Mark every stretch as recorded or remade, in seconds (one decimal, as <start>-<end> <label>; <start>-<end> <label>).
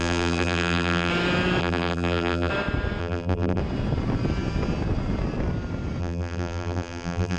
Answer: 0.0-1.1 remade; 1.1-1.6 recorded; 1.6-2.5 remade; 2.5-3.0 recorded; 3.0-3.6 remade; 3.6-6.0 recorded; 6.0-7.4 remade